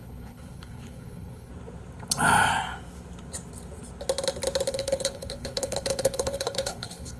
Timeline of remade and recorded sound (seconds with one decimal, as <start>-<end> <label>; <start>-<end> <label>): 0.0-1.5 remade; 1.5-4.7 recorded; 4.7-7.2 remade